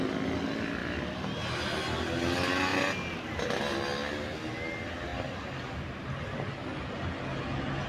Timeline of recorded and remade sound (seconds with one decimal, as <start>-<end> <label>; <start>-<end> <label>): 0.0-7.9 recorded